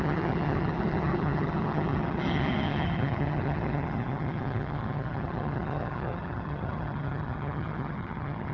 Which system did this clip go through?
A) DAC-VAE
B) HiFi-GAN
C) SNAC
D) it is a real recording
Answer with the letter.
B